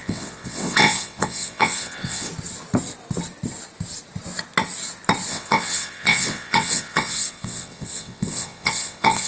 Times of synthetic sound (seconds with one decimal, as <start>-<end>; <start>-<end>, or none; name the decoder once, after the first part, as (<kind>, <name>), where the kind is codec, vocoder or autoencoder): 0.0-2.3 (vocoder, WaveNeXt); 5.3-9.3